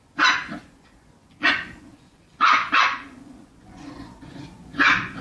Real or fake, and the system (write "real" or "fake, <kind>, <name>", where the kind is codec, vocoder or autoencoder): fake, vocoder, Vocos